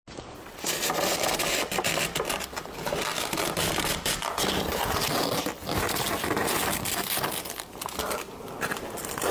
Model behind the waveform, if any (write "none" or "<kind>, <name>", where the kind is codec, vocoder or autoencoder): none